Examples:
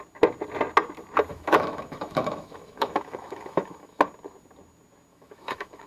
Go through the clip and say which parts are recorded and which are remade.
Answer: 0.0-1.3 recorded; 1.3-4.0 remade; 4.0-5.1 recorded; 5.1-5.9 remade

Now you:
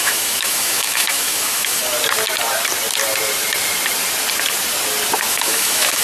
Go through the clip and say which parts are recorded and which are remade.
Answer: 0.0-1.8 remade; 1.8-5.3 recorded; 5.3-6.0 remade